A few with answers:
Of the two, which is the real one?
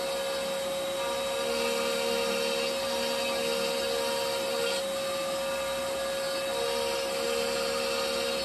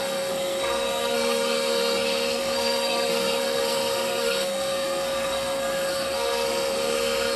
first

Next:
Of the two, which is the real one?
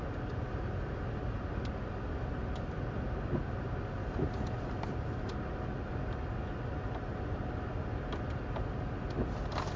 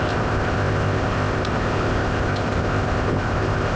first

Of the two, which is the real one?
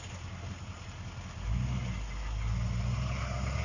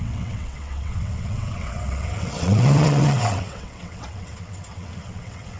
first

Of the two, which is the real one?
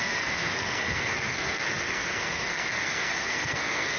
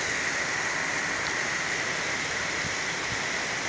second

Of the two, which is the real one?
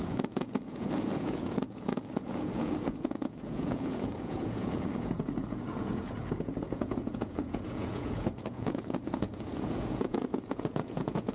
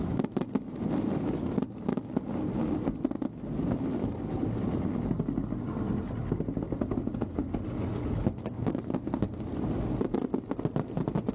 second